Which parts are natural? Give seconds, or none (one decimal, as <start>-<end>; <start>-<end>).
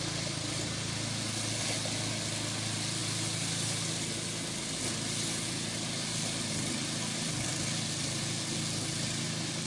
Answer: 0.0-9.7